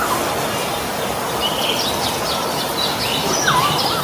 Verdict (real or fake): real